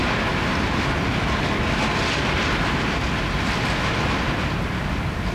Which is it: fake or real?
real